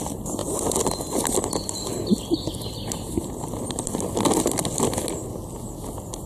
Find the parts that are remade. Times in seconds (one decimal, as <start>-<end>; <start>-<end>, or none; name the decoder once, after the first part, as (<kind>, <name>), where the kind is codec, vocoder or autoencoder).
none